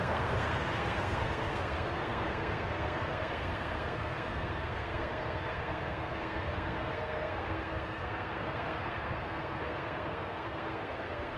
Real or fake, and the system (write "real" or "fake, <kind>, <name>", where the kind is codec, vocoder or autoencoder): fake, codec, SNAC